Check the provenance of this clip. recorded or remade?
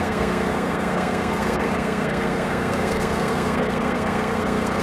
remade